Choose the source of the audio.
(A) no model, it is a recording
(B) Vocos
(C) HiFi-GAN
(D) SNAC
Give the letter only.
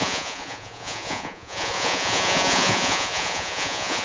B